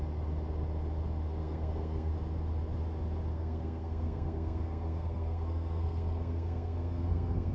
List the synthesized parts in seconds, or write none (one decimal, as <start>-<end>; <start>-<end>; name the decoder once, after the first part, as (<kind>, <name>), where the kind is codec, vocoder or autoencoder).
1.4-2.1 (codec, SNAC); 3.3-7.5